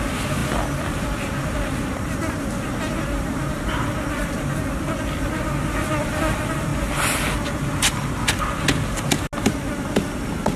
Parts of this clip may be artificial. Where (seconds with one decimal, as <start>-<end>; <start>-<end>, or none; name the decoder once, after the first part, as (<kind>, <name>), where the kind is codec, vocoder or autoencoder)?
none